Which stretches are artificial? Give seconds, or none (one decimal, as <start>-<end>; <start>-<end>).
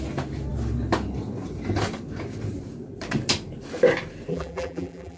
4.3-5.2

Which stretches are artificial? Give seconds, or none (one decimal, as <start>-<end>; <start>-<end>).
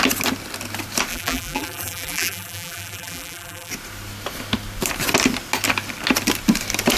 1.1-3.7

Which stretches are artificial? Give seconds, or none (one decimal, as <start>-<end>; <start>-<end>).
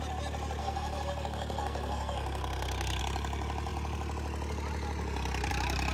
0.6-3.0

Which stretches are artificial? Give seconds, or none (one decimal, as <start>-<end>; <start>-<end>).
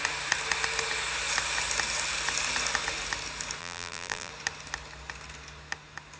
3.6-4.3